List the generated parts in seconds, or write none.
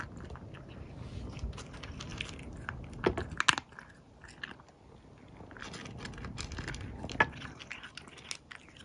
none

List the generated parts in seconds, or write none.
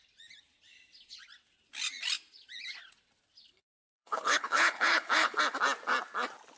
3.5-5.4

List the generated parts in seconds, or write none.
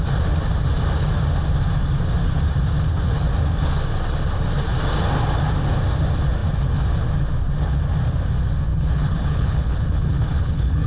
8.7-10.9